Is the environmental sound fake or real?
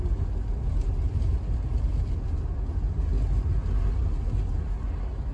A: real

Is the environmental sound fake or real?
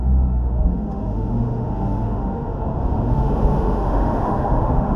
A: fake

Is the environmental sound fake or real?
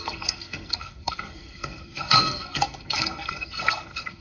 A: fake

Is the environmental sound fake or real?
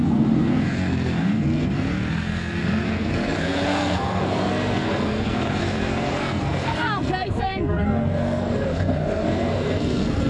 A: fake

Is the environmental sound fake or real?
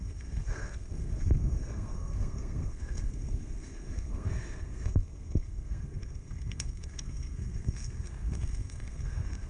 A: fake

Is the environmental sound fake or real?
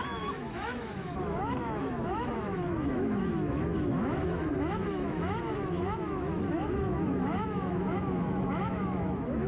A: fake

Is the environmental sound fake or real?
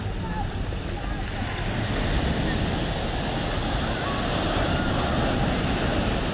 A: real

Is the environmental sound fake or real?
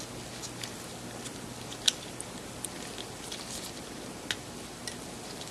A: real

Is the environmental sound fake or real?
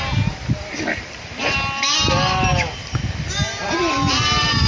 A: fake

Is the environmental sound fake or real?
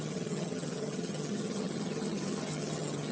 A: fake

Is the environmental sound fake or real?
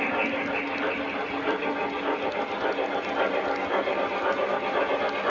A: real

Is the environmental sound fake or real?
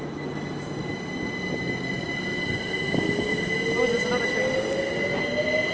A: real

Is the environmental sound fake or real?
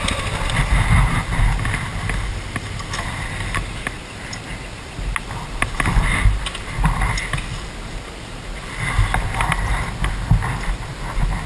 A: real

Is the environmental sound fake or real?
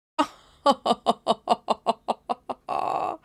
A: real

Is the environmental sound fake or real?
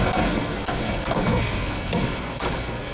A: fake